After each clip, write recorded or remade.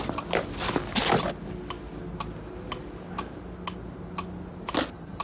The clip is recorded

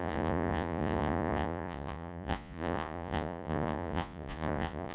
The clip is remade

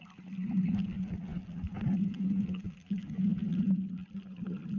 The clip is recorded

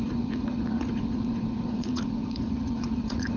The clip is remade